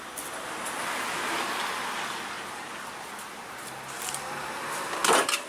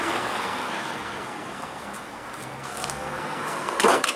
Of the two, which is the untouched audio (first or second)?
first